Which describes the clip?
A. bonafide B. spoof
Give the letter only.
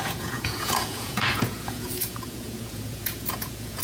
B